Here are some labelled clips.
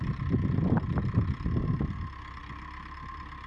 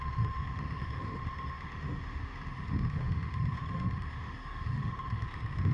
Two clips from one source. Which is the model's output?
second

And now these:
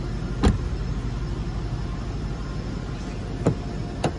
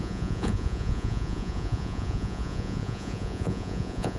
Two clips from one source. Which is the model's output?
second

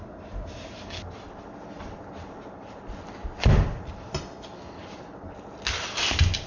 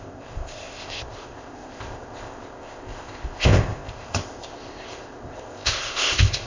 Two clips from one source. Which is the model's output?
second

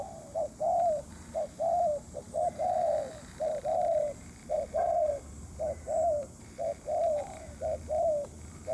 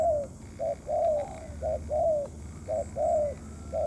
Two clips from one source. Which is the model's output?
first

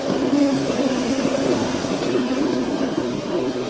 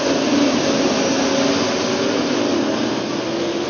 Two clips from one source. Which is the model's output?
first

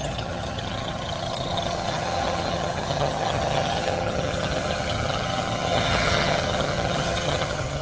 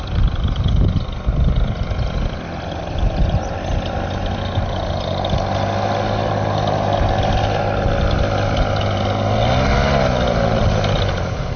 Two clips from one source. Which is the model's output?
first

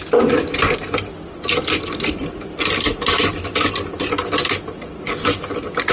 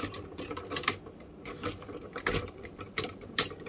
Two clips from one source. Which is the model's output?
second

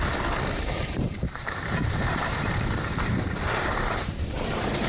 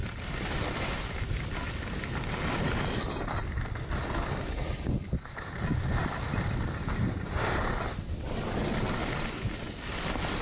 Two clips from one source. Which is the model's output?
first